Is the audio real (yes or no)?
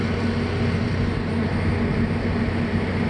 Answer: yes